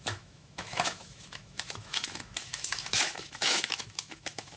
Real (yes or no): no